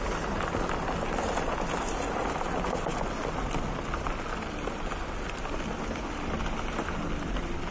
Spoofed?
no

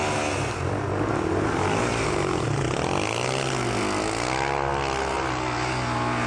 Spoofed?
no